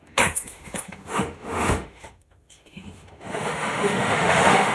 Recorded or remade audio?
remade